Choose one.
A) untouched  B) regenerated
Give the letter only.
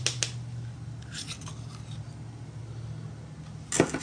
A